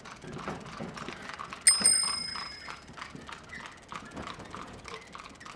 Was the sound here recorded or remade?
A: recorded